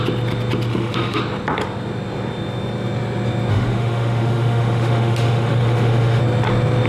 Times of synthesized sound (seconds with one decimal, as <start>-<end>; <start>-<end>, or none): 0.7-1.2; 3.5-6.2